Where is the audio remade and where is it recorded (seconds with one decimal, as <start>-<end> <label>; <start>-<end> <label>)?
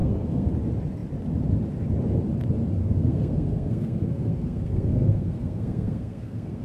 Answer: 0.0-0.5 remade; 0.5-2.8 recorded; 2.8-6.6 remade